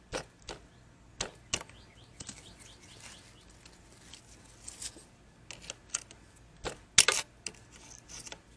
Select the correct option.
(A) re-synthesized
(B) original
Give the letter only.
B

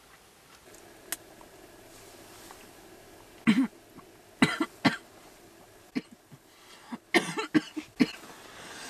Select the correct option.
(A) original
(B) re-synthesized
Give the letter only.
A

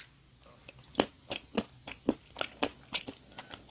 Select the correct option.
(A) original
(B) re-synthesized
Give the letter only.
A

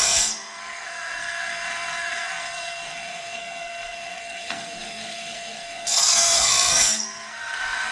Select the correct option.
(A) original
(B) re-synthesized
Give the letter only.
B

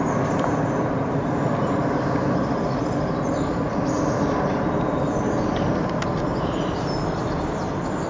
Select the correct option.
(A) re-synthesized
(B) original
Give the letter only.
B